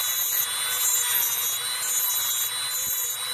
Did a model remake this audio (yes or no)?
no